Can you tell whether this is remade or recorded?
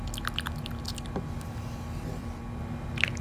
recorded